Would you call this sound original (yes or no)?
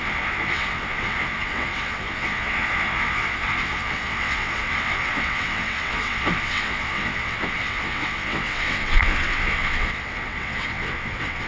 no